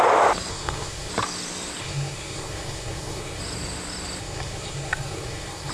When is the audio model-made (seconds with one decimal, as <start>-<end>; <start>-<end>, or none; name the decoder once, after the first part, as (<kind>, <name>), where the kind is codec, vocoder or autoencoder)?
0.5-1.1 (codec, SNAC); 1.8-3.4; 4.2-5.7